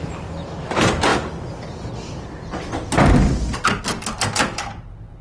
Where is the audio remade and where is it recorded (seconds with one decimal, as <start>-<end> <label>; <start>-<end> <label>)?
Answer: 0.0-5.2 recorded